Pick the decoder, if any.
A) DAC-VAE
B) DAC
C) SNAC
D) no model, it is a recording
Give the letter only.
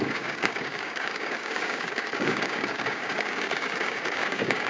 B